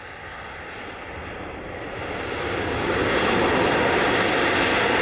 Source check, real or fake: real